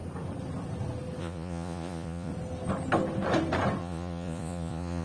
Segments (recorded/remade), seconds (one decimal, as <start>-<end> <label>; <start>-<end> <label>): 0.0-1.2 recorded; 1.2-2.3 remade; 2.3-3.8 recorded; 3.8-5.0 remade